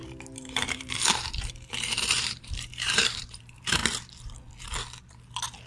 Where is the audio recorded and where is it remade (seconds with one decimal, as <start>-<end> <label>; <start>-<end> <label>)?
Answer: 0.0-3.8 remade; 3.8-5.7 recorded